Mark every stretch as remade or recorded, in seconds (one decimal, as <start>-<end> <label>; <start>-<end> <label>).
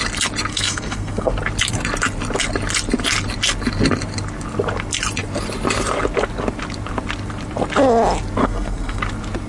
0.0-0.5 recorded; 0.5-1.3 remade; 1.3-8.4 recorded; 8.4-9.0 remade; 9.0-9.5 recorded